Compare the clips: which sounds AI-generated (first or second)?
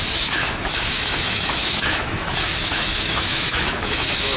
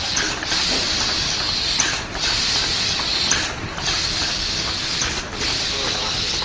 first